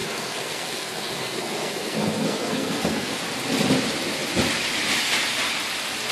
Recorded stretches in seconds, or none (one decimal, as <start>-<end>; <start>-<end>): 3.2-6.1